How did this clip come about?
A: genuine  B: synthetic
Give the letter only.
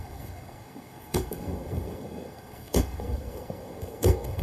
B